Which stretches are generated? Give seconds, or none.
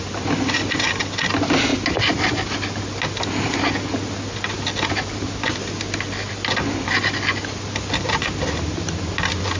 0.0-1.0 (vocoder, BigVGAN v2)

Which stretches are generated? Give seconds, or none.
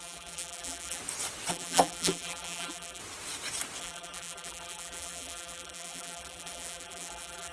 0.0-1.0 (vocoder, BigVGAN v2); 1.5-3.0; 3.8-7.5